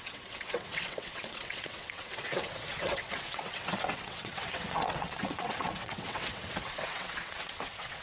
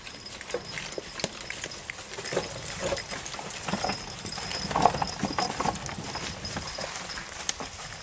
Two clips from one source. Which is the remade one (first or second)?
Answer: first